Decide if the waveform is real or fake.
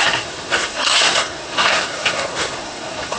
fake